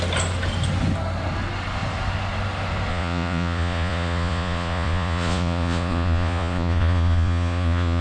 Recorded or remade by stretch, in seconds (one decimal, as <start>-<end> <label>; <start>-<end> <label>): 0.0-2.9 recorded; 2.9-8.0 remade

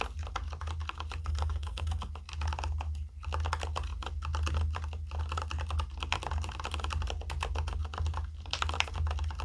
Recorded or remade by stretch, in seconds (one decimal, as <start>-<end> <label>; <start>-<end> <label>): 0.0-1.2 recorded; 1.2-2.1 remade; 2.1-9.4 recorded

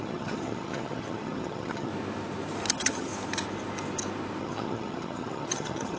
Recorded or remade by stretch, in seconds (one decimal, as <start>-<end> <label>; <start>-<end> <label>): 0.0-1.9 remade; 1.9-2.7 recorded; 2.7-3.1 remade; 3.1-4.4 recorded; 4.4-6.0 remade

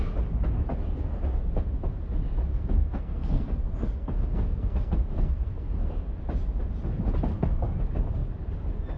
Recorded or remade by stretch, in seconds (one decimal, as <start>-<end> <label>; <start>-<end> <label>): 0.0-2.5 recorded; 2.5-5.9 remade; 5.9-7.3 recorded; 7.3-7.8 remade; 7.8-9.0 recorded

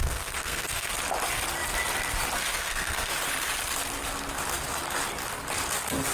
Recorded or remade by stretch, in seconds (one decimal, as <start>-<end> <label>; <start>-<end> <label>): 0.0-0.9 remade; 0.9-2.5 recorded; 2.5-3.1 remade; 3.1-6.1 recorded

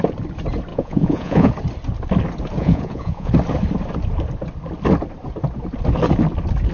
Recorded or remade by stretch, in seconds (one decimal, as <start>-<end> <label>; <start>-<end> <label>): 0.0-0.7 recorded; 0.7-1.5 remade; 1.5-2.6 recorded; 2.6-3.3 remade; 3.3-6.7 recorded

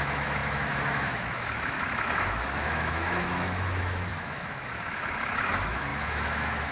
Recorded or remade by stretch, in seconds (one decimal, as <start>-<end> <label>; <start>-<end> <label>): 0.0-6.7 remade